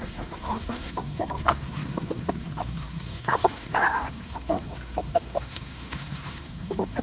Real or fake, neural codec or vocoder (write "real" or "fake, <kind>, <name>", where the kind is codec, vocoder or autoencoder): fake, codec, SNAC